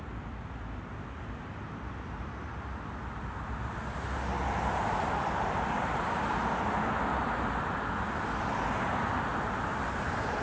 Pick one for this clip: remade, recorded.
recorded